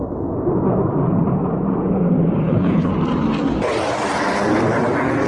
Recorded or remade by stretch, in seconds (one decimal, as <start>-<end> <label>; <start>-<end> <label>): 0.0-2.4 recorded; 2.4-2.9 remade; 2.9-5.3 recorded